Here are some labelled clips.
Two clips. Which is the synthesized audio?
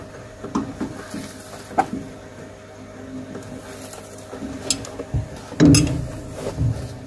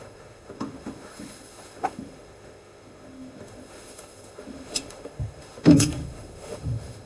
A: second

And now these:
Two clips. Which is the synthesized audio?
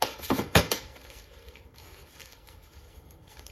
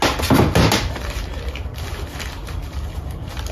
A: first